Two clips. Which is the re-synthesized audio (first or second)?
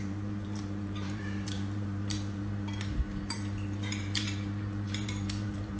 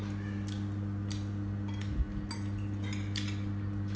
first